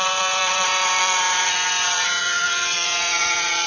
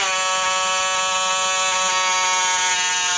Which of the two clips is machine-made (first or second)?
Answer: first